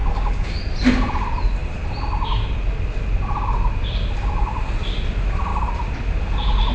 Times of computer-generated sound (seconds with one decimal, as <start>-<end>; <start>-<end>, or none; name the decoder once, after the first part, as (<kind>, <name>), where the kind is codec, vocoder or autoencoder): 0.0-0.5 (codec, DAC)

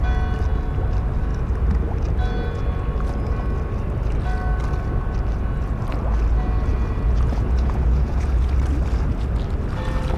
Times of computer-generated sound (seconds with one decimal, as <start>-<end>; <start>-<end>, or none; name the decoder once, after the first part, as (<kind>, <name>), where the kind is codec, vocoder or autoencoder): 6.7-8.5 (vocoder, Vocos)

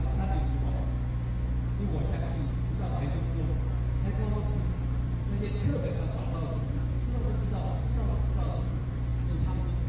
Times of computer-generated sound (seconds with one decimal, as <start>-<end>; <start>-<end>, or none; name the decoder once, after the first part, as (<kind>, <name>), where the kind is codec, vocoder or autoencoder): 0.0-0.4 (vocoder, BigVGAN v2); 3.2-9.1